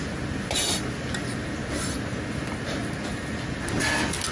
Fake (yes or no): no